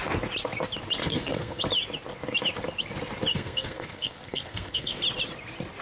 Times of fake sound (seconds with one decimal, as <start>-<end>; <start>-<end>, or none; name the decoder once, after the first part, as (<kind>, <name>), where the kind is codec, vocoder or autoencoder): 1.0-1.6 (codec, SNAC); 3.3-5.0